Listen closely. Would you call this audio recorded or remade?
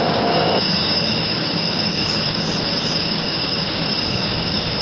remade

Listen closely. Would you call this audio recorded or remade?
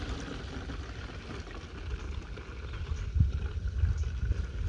recorded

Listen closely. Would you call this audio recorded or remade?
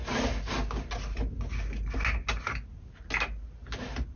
recorded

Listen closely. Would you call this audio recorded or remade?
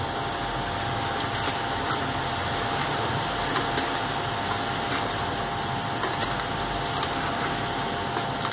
recorded